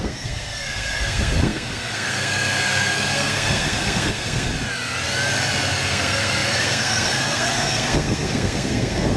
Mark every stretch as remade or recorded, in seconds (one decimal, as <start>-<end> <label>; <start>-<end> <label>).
0.0-4.5 remade; 4.5-5.9 recorded; 5.9-9.2 remade